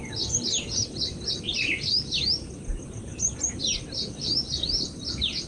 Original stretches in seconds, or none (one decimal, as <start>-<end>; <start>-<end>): 0.0-1.5; 2.0-5.5